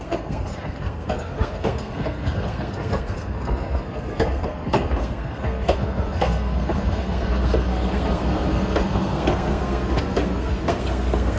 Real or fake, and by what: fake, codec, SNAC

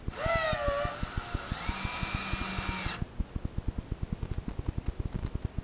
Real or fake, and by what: real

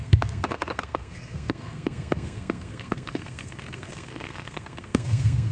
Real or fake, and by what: fake, codec, SNAC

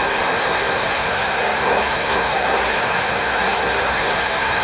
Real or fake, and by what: fake, codec, SNAC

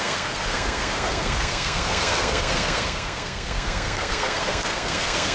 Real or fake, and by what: fake, codec, SNAC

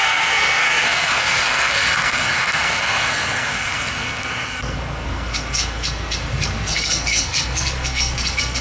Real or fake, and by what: fake, codec, SNAC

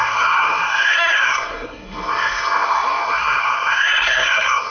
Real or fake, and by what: fake, codec, SNAC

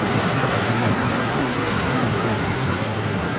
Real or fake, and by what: fake, codec, SNAC